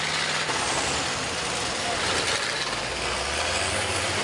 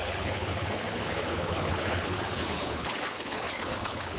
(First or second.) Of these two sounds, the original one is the first